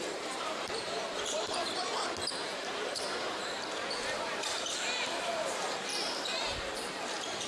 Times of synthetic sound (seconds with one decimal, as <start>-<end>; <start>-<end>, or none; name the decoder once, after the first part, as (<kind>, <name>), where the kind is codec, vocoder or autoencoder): 0.0-1.6 (vocoder, BigVGAN v2); 2.4-7.5